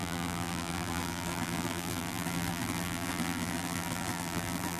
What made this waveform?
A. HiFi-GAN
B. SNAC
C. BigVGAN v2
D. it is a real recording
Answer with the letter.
C